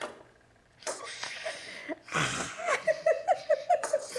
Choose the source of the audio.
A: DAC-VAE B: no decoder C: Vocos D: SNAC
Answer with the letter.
C